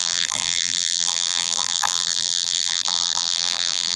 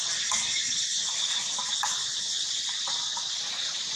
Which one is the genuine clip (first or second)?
second